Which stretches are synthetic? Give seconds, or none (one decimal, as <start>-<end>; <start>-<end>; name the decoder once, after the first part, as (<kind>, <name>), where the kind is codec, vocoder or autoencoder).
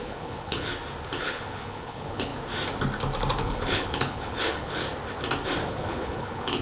0.0-0.7 (codec, HILCodec); 1.2-2.3; 3.4-4.8; 5.7-6.6